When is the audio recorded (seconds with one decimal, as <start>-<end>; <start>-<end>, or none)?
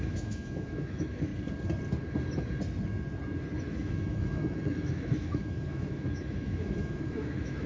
1.3-3.6